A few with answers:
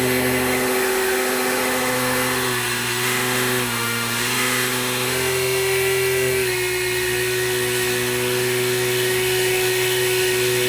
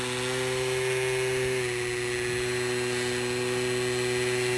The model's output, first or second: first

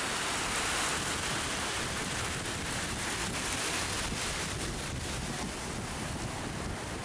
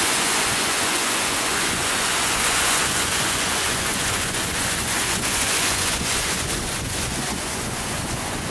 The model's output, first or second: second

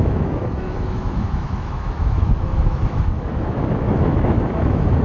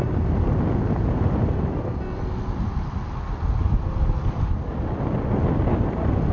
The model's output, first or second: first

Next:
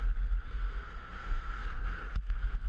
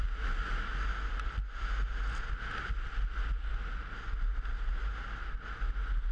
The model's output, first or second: first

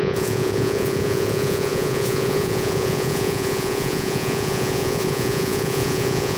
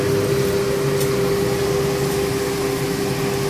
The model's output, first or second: first